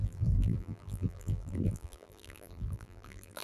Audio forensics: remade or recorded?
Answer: remade